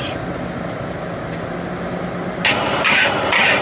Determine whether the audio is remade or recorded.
recorded